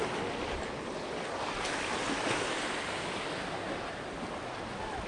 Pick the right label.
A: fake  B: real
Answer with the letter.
B